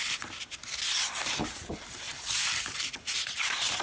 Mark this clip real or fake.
real